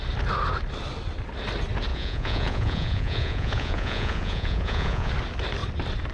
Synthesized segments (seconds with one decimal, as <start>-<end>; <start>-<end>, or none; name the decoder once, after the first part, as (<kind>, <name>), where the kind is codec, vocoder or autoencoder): 1.9-5.1 (vocoder, Vocos)